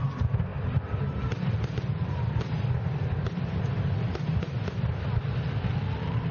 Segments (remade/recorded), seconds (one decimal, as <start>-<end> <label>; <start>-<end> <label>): 0.0-6.3 recorded